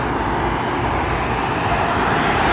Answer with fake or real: real